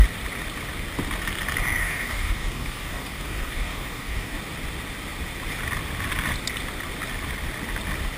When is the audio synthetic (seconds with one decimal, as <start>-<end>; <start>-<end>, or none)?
1.8-4.4